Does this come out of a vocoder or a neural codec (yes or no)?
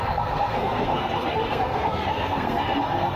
yes